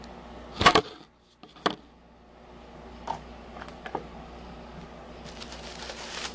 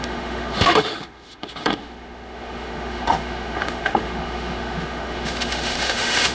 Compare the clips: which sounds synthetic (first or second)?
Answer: second